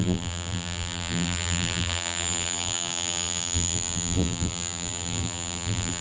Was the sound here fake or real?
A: fake